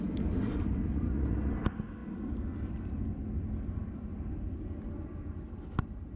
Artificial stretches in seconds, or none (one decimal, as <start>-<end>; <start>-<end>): 0.9-1.5